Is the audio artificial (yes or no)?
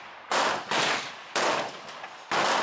no